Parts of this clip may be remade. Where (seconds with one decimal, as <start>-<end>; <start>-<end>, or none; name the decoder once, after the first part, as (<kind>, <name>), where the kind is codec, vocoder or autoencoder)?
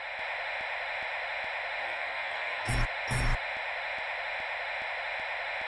1.8-2.7 (codec, SNAC)